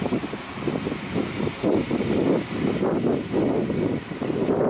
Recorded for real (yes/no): yes